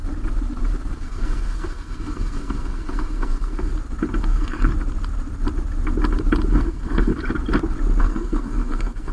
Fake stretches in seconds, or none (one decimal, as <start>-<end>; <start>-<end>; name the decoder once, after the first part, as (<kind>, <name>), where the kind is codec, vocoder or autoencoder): 1.0-3.7 (codec, SNAC); 4.2-4.7; 6.5-7.1; 8.0-9.1